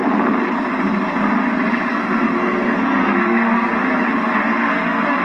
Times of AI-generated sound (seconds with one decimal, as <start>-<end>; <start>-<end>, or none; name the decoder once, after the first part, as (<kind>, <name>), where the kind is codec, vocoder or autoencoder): 1.9-3.7 (codec, SNAC); 4.4-5.2